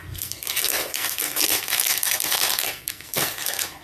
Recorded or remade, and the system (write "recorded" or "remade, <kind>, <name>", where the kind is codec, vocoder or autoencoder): remade, codec, SNAC